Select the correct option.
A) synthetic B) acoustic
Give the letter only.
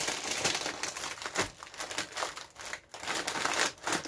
B